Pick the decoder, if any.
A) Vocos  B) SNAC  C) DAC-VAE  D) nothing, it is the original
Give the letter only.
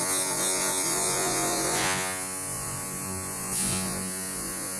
A